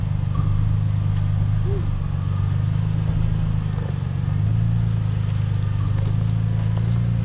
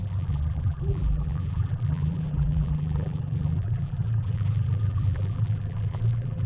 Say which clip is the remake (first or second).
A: second